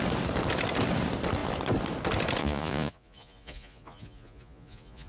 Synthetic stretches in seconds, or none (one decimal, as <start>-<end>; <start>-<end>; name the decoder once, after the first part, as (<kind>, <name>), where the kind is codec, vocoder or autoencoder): 2.4-5.1 (vocoder, Vocos)